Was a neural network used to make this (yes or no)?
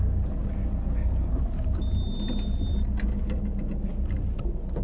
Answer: no